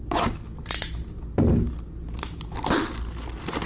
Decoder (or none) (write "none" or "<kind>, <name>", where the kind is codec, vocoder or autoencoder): none